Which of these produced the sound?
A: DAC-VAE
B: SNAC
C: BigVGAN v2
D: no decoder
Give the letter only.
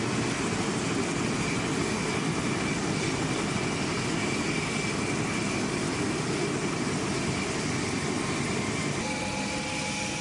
D